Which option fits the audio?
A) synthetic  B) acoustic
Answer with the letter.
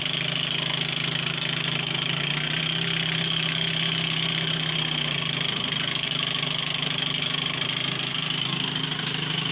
B